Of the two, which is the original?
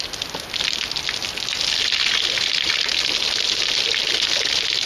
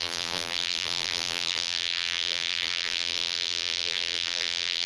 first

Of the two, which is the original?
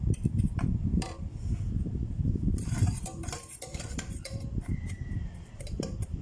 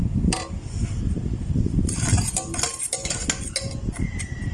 second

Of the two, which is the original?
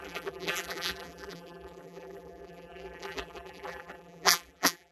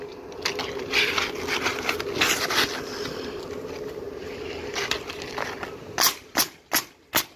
second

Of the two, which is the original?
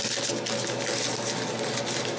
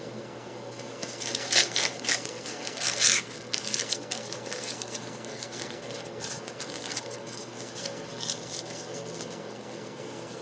first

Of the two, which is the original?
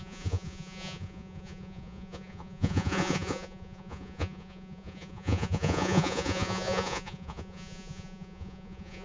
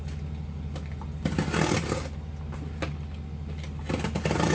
second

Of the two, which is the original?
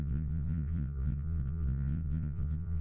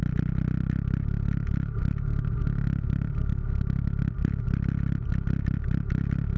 second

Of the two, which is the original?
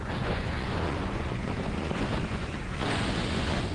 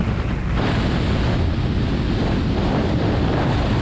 second